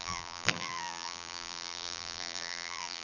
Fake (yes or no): yes